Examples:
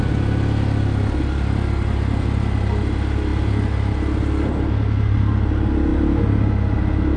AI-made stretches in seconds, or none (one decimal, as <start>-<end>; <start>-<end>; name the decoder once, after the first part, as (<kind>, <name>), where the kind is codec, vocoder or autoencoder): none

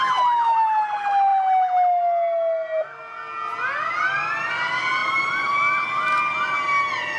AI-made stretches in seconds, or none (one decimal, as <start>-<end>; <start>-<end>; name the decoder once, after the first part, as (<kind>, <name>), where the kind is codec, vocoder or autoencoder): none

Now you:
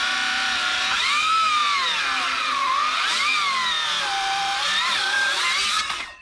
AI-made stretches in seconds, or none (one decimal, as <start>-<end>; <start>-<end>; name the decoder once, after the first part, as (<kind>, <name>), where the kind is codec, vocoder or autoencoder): 0.0-1.6 (vocoder, BigVGAN v2); 4.0-6.2

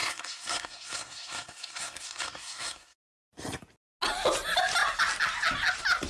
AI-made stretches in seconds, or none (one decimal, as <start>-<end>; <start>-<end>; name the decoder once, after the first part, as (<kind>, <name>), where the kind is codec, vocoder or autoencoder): 0.0-3.3 (codec, SNAC)

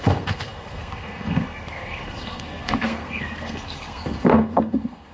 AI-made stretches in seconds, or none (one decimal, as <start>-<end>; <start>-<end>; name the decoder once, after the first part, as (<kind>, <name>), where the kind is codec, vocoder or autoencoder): 0.0-5.1 (codec, SNAC)

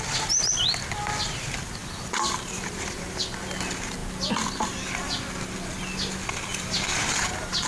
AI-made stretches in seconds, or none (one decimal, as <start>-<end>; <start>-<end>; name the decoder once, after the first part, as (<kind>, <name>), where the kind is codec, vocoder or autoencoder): 1.8-3.2 (vocoder, BigVGAN v2); 6.5-7.7